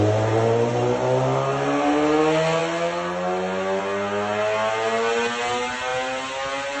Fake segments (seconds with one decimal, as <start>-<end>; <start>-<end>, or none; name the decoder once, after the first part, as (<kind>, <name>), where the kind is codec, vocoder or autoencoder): none